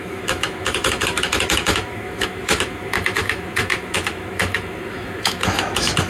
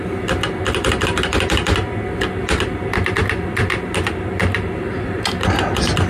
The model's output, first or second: first